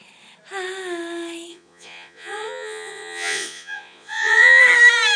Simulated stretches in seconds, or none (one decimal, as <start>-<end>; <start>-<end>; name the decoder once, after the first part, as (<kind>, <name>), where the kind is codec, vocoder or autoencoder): 1.5-4.6 (vocoder, Vocos)